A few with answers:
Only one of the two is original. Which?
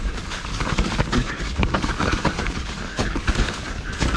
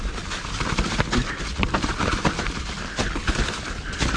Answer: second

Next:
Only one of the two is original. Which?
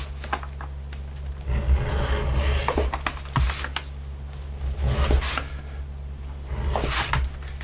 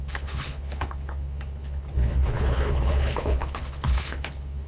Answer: first